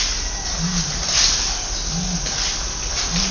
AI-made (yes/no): no